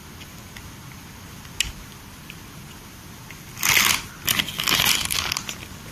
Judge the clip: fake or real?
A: real